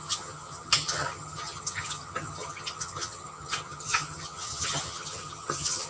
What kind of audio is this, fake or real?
fake